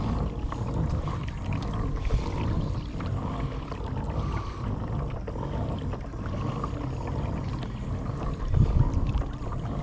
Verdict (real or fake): real